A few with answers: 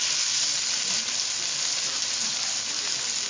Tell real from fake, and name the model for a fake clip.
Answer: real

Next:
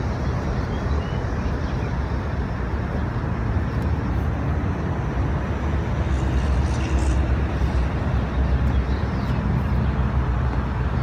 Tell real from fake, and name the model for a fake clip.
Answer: real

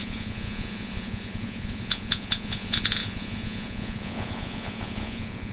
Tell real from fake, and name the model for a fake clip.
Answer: fake, vocoder, Vocos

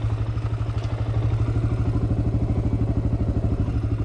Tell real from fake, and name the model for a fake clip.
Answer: real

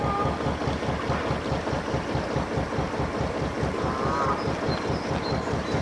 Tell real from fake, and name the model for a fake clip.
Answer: real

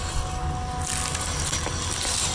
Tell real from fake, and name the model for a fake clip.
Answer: real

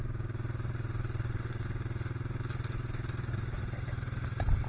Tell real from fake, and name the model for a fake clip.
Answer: real